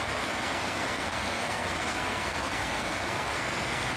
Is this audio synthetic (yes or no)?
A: yes